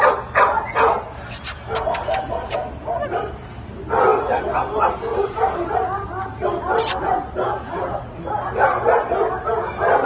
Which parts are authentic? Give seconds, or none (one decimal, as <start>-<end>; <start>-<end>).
0.0-10.1

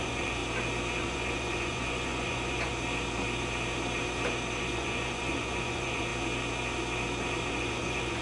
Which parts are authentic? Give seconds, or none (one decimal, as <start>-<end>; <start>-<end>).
0.4-1.0; 2.7-4.6; 6.1-7.5